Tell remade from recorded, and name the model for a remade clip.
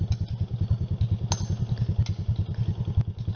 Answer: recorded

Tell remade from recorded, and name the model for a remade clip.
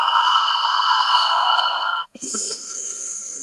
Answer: remade, codec, SNAC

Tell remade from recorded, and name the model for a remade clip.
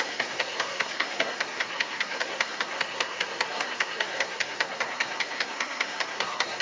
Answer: remade, codec, SNAC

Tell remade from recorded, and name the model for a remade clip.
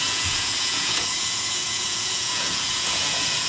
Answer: remade, vocoder, Vocos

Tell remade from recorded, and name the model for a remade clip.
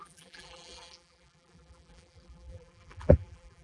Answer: remade, vocoder, BigVGAN v2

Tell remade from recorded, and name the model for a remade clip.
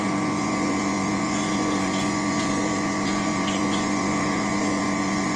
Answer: remade, vocoder, Vocos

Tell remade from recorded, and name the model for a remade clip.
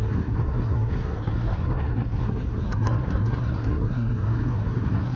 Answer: remade, codec, SNAC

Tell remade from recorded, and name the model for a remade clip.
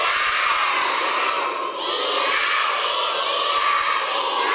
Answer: recorded